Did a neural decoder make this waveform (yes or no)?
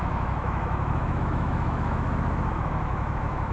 yes